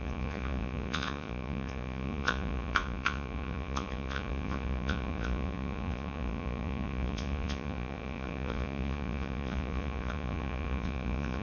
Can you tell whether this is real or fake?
fake